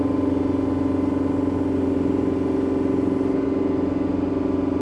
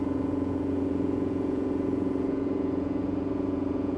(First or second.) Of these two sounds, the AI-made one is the second